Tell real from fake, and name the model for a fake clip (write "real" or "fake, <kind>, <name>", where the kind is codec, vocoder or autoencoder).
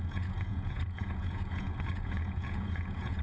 fake, vocoder, Vocos